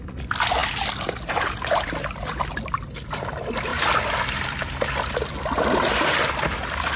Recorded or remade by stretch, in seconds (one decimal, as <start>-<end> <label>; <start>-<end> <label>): 0.0-3.7 recorded; 3.7-6.3 remade; 6.3-7.0 recorded

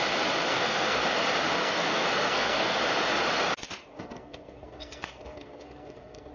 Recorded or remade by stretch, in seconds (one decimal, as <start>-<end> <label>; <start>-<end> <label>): 0.0-0.5 recorded; 0.5-1.0 remade; 1.0-1.6 recorded; 1.6-2.8 remade; 2.8-3.9 recorded; 3.9-6.3 remade

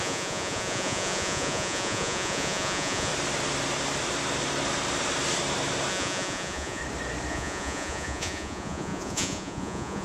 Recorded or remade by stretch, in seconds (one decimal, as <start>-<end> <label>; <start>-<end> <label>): 0.0-3.1 remade; 3.1-5.9 recorded; 5.9-6.8 remade; 6.8-7.3 recorded; 7.3-10.0 remade

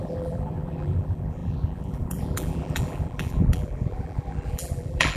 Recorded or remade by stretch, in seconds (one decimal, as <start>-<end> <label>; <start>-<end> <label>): 0.0-5.2 remade

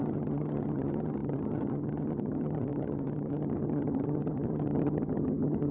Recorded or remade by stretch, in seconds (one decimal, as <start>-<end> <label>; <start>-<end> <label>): 0.0-5.7 remade

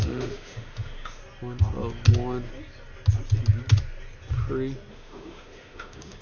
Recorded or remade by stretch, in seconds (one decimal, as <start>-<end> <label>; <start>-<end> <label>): 0.0-1.2 remade; 1.2-4.9 recorded; 4.9-6.2 remade

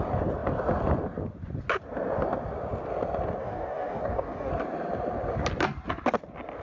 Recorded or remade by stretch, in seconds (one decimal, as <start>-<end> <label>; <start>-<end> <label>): 0.0-3.4 recorded; 3.4-4.5 remade; 4.5-6.6 recorded

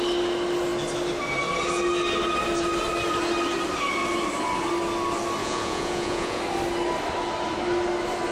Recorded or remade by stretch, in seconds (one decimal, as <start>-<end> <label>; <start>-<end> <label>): 0.0-5.4 recorded; 5.4-6.4 remade; 6.4-8.3 recorded